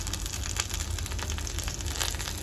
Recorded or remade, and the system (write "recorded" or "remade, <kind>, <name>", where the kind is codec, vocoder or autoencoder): recorded